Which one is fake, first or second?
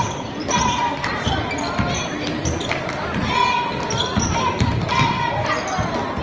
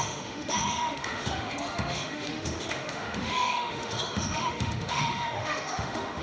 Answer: second